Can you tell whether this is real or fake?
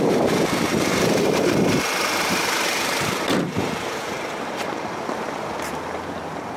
fake